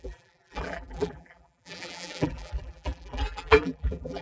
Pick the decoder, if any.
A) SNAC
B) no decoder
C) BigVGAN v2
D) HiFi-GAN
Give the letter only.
C